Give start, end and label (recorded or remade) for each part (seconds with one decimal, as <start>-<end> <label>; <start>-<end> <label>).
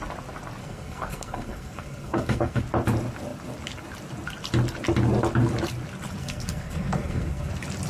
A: 0.0-0.6 recorded; 0.6-2.6 remade; 2.6-6.2 recorded; 6.2-7.5 remade; 7.5-7.9 recorded